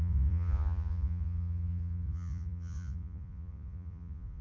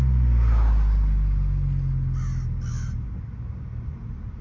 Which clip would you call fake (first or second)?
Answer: first